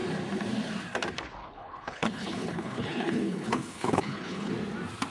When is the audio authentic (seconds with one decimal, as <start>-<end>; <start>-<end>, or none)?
0.0-1.4; 4.5-5.1